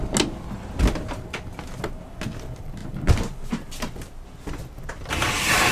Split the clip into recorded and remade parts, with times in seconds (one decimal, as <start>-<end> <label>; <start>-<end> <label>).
0.0-5.7 recorded